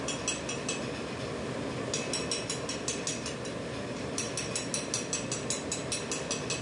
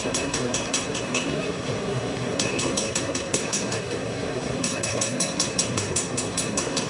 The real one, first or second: first